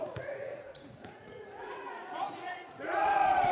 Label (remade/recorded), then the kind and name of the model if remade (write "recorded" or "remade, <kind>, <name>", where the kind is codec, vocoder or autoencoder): remade, vocoder, Vocos